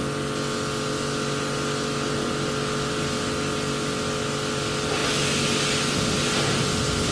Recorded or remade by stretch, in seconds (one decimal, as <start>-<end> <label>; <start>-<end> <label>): 0.0-7.1 recorded